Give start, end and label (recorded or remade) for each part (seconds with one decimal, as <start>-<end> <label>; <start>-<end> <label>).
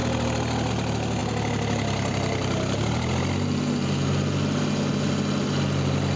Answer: 0.0-6.2 recorded